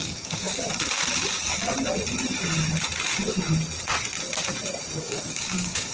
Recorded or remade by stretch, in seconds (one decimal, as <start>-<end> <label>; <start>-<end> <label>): 0.0-0.5 remade; 0.5-1.1 recorded; 1.1-1.5 remade; 1.5-5.0 recorded; 5.0-5.9 remade